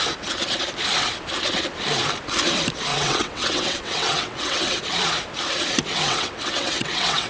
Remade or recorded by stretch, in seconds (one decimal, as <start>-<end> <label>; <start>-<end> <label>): 0.0-2.9 recorded; 2.9-4.8 remade; 4.8-5.9 recorded; 5.9-7.3 remade